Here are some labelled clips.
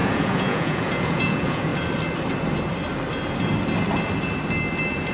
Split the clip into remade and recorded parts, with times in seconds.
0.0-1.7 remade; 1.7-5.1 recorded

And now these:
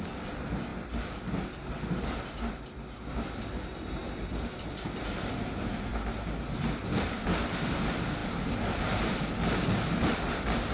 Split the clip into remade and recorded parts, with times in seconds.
0.0-10.7 recorded

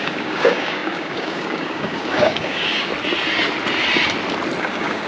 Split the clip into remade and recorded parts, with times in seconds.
0.0-2.9 remade; 2.9-4.6 recorded; 4.6-5.1 remade

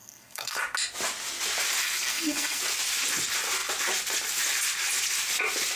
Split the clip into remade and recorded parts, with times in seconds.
0.0-0.6 remade; 0.6-1.8 recorded; 1.8-2.6 remade; 2.6-5.8 recorded

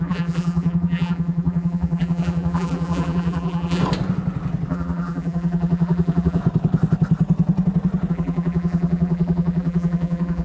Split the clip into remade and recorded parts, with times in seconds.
0.0-3.8 remade; 3.8-4.7 recorded; 4.7-6.4 remade; 6.4-8.1 recorded; 8.1-10.4 remade

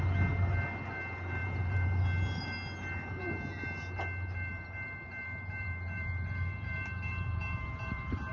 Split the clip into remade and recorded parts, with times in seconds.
0.0-1.4 recorded; 1.4-2.0 remade; 2.0-4.5 recorded; 4.5-8.3 remade